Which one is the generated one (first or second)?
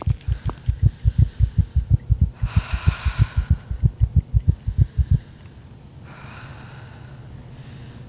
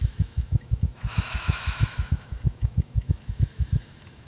second